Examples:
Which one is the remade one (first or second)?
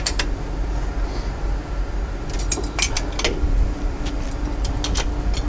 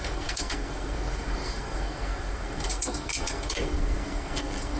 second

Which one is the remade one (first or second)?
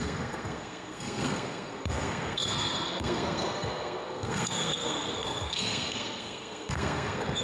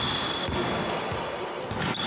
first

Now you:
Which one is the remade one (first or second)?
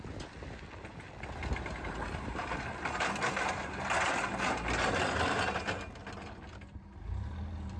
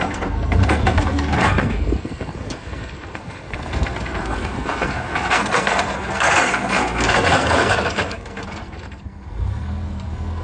second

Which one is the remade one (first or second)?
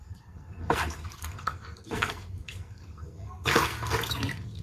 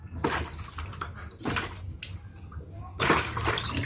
first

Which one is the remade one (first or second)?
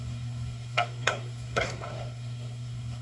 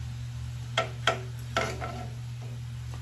first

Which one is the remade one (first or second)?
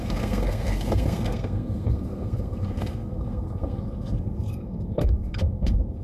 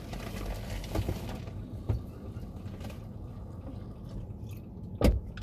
first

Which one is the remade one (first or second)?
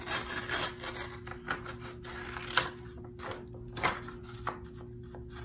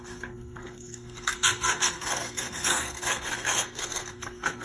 second